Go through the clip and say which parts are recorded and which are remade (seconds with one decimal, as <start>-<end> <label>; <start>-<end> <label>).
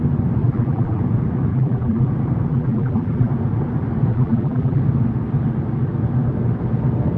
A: 0.0-0.4 recorded; 0.4-1.0 remade; 1.0-1.5 recorded; 1.5-2.1 remade; 2.1-2.5 recorded; 2.5-3.3 remade; 3.3-4.1 recorded; 4.1-4.8 remade; 4.8-7.2 recorded